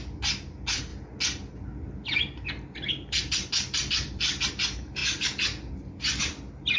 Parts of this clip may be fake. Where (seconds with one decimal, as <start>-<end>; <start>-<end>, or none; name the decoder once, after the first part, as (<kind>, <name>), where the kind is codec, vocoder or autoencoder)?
0.0-0.9 (vocoder, BigVGAN v2); 2.9-5.0; 5.7-6.8